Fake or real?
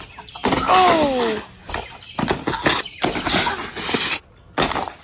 real